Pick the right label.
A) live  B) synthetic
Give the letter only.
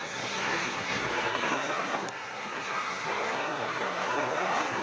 B